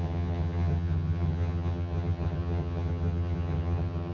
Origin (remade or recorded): remade